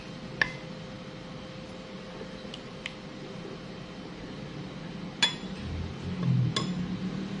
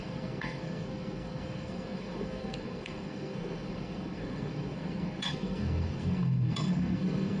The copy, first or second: second